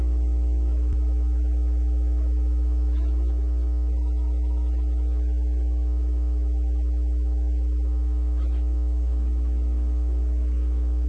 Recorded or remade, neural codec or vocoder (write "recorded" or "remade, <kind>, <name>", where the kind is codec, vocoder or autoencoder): remade, autoencoder, DAC-VAE